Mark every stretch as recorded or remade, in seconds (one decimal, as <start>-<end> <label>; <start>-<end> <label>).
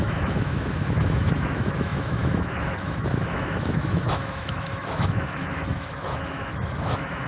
0.0-7.3 remade